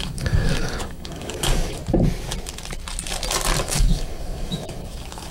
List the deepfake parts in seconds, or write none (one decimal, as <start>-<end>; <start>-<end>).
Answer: 0.0-1.8; 3.6-5.3